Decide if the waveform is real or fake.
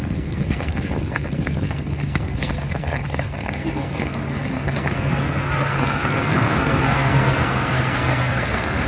fake